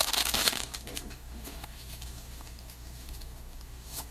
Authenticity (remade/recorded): remade